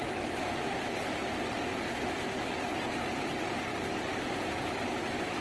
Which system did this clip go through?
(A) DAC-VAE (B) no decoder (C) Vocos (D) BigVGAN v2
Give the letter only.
B